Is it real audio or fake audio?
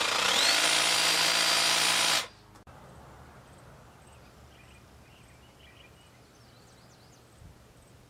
real